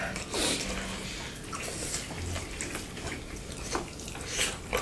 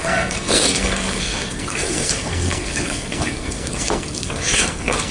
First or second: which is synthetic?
second